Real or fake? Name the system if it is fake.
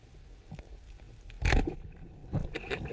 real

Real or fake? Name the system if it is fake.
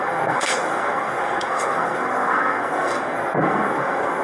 fake, codec, SNAC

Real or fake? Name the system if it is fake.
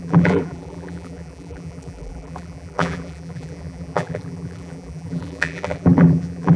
fake, vocoder, BigVGAN v2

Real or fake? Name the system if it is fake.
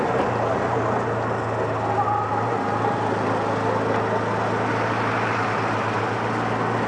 real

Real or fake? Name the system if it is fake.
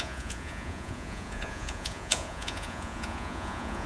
fake, vocoder, Vocos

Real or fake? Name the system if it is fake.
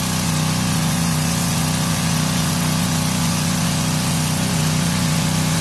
fake, vocoder, Vocos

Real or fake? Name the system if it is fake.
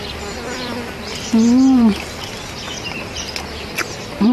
real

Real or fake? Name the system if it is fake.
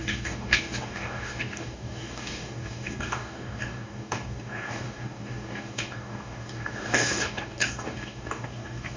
fake, codec, DAC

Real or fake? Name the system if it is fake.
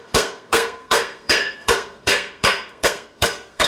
fake, codec, SNAC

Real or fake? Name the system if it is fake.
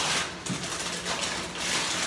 real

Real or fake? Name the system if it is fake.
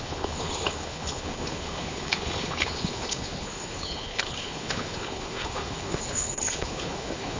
fake, codec, HILCodec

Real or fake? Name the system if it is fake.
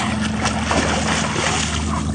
real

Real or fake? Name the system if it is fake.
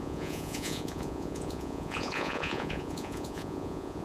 fake, vocoder, Vocos